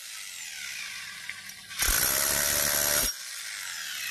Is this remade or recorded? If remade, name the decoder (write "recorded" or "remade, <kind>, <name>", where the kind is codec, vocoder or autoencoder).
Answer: recorded